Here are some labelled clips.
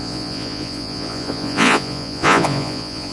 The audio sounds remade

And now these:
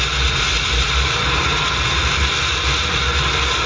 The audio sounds recorded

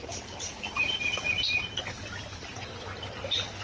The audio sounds recorded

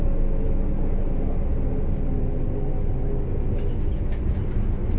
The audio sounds recorded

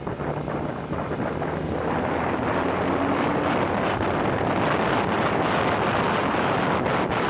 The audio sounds recorded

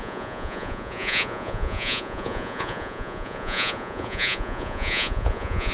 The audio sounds remade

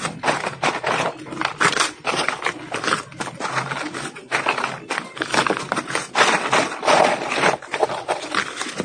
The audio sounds recorded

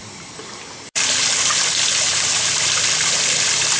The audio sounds recorded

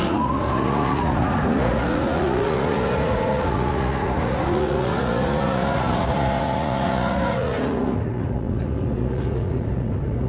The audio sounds remade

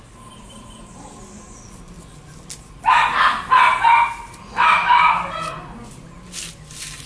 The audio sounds recorded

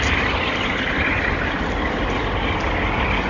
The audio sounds recorded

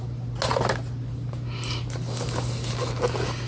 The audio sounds recorded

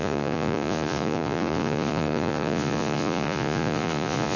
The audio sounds remade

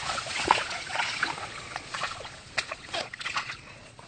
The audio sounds remade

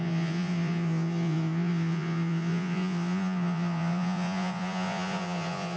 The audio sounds remade